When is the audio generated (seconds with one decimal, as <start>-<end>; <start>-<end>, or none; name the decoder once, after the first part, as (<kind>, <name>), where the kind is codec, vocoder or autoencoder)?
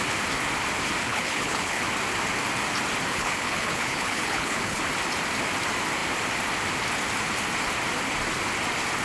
1.0-1.8 (codec, HILCodec); 3.1-4.8